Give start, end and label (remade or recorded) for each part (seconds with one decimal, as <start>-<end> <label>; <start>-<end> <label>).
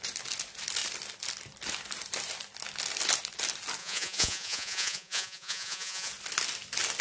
0.0-3.8 recorded; 3.8-6.1 remade; 6.1-7.0 recorded